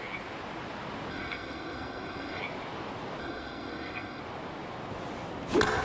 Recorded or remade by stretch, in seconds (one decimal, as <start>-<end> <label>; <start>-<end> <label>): 0.0-1.1 recorded; 1.1-2.4 remade; 2.4-3.2 recorded; 3.2-4.2 remade; 4.2-5.8 recorded